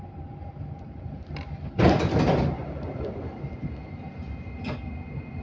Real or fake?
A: real